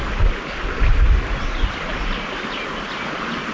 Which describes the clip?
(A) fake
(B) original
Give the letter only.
B